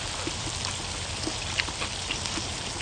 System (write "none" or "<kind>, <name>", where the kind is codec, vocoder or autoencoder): none